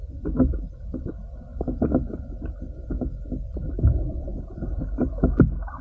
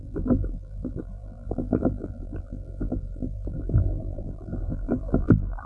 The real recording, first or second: first